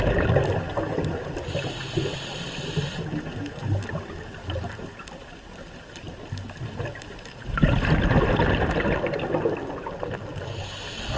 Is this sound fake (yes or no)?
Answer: no